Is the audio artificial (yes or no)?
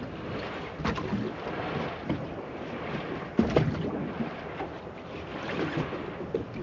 no